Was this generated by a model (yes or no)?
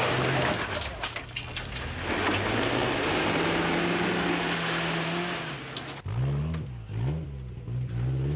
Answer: no